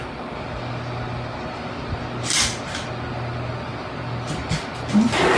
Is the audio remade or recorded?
recorded